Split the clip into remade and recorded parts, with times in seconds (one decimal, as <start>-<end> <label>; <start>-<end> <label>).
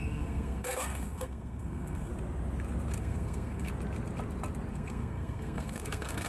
0.0-2.1 remade; 2.1-3.0 recorded; 3.0-3.7 remade; 3.7-4.7 recorded; 4.7-6.3 remade